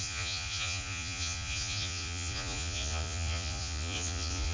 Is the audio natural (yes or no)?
no